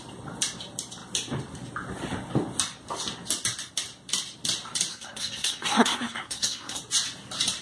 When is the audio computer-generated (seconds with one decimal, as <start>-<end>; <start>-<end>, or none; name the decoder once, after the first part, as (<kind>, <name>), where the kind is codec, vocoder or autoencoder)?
4.9-6.8 (codec, SNAC)